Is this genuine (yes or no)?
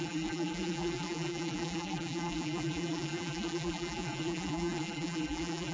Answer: no